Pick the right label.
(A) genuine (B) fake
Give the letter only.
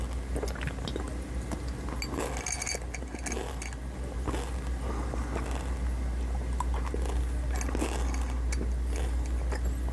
A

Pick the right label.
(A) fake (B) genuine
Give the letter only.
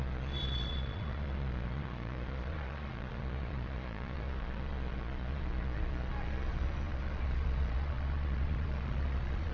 A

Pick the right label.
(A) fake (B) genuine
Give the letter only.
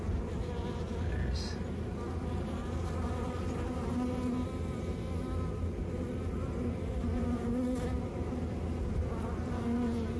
B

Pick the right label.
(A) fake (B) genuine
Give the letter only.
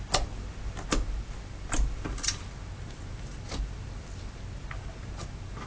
B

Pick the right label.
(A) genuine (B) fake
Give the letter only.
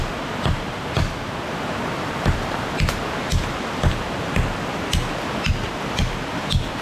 A